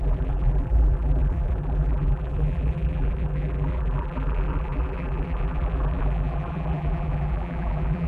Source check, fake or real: fake